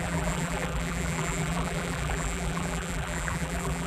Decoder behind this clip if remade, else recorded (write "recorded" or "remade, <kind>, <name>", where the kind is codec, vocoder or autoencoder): remade, vocoder, BigVGAN v2